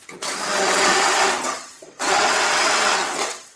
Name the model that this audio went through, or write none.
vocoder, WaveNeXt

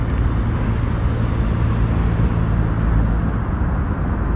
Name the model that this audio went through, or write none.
none